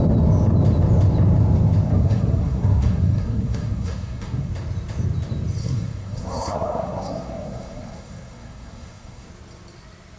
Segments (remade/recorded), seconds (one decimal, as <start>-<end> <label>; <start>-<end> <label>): 0.0-1.9 recorded; 1.9-4.5 remade; 4.5-5.6 recorded; 5.6-9.3 remade; 9.3-10.2 recorded